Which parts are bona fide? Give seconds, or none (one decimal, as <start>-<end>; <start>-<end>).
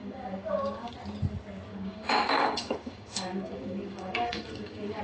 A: 0.9-1.7